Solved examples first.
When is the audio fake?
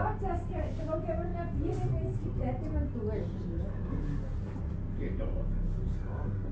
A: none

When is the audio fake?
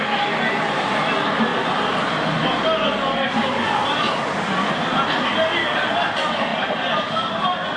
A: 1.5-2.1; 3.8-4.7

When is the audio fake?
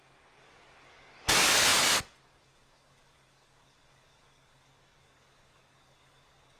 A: 0.0-6.6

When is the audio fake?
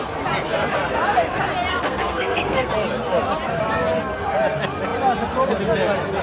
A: 1.7-2.7